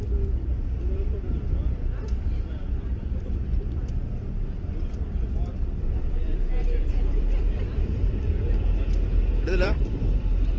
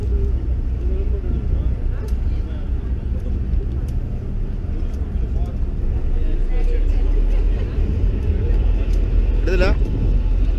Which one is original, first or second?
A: second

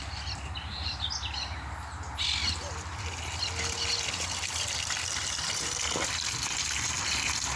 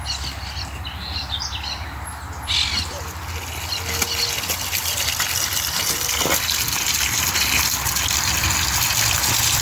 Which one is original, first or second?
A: second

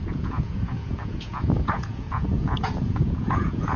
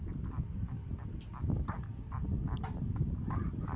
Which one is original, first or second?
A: second